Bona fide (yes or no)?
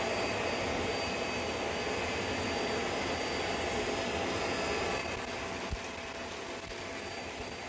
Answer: yes